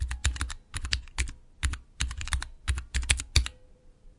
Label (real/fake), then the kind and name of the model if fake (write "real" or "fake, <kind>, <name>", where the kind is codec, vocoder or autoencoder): real